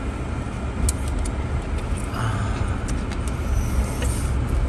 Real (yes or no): yes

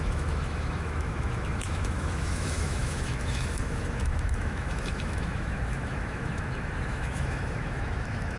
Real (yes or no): no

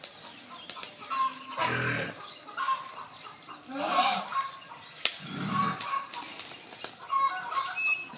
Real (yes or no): yes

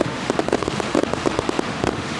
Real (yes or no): no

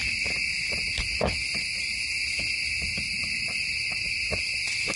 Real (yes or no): yes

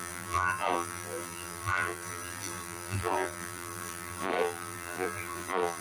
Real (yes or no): no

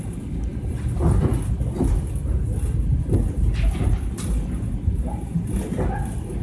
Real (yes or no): yes